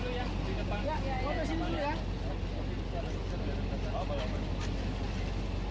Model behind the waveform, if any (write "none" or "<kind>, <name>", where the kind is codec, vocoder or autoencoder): none